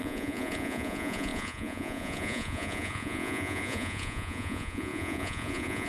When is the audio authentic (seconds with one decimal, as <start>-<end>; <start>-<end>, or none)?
none